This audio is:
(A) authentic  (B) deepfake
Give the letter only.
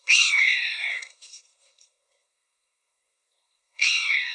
B